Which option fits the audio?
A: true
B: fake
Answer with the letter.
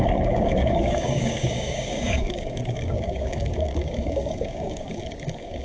B